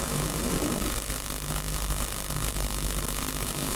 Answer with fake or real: fake